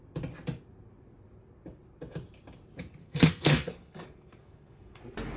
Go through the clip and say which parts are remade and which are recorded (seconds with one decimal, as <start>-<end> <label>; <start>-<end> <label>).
0.0-3.0 recorded; 3.0-5.0 remade; 5.0-5.4 recorded